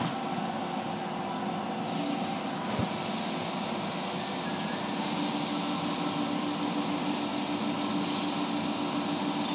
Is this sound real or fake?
real